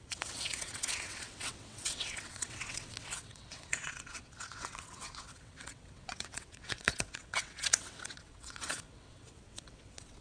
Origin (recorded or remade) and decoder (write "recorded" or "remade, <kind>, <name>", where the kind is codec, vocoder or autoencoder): remade, vocoder, WaveNeXt